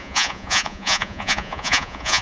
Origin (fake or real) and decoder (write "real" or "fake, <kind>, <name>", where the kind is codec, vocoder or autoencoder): fake, vocoder, Vocos